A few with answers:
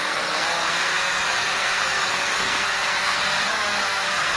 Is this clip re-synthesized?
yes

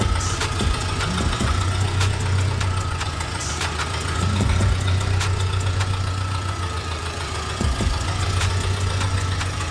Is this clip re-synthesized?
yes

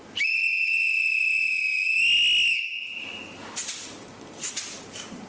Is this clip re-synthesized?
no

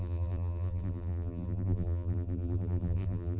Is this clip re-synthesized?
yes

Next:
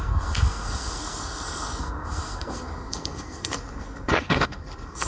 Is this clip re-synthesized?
yes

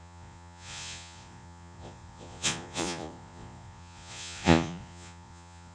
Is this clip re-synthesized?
yes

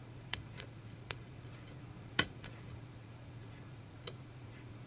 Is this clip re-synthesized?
yes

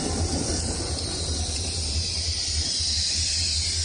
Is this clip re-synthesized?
no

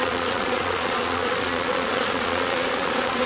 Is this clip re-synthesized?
yes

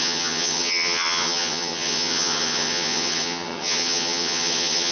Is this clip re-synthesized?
yes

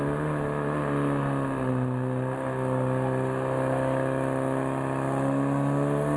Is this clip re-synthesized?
no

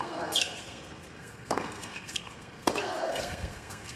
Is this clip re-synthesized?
yes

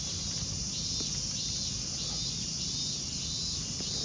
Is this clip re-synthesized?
no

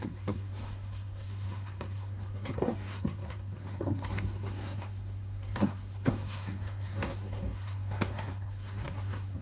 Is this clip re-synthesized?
yes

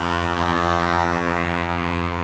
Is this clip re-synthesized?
yes